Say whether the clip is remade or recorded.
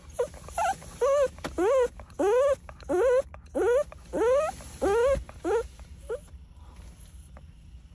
recorded